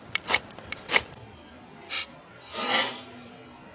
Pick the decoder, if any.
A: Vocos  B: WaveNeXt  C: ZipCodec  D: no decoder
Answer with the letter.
D